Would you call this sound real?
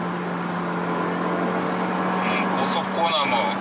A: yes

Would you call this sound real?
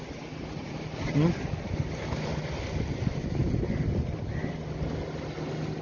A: yes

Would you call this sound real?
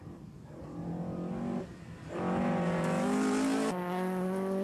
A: yes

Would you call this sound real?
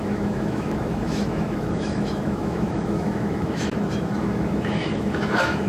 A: no